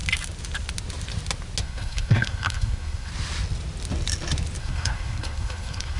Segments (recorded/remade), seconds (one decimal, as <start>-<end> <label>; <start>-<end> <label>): 0.0-1.6 recorded; 1.6-3.1 remade; 3.1-4.6 recorded; 4.6-6.0 remade

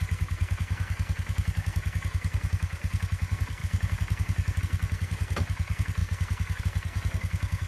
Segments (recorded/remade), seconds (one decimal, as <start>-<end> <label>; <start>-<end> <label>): 0.0-7.7 remade